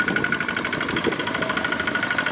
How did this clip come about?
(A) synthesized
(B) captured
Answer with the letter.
B